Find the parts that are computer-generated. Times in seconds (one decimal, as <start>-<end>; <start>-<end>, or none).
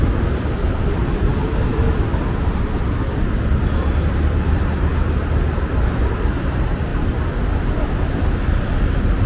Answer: none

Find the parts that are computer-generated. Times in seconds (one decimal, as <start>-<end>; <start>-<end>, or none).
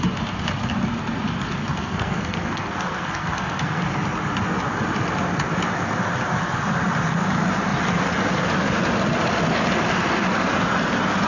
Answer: 1.6-3.8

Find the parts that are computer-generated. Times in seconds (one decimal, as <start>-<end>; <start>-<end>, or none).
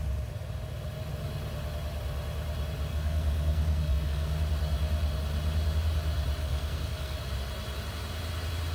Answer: 2.9-4.3; 6.4-7.2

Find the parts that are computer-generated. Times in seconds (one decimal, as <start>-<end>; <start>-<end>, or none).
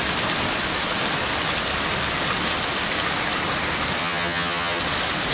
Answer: 4.0-4.8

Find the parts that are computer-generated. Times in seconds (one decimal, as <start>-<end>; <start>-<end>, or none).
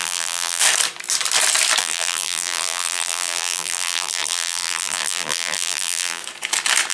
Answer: 0.0-0.6; 1.8-6.2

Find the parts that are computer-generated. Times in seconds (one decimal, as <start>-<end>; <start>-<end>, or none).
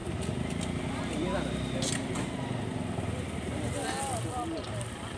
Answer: none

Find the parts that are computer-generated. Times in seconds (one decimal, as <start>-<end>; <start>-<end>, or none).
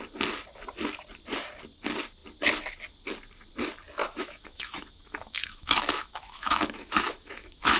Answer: 4.0-7.8